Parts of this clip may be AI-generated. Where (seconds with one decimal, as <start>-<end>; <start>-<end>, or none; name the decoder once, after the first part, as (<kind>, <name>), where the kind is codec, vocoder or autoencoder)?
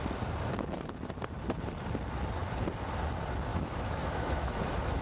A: 3.5-4.6 (autoencoder, DAC-VAE)